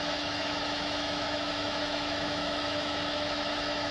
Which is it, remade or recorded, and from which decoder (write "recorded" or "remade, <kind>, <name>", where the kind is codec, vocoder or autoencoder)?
remade, autoencoder, DAC-VAE